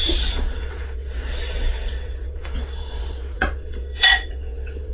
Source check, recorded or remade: remade